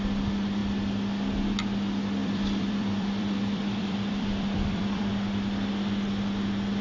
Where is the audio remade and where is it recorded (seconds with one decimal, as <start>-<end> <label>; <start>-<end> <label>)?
0.0-2.2 recorded; 2.2-5.0 remade; 5.0-6.8 recorded